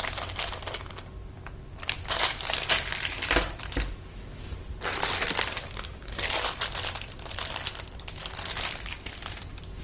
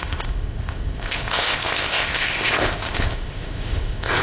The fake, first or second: second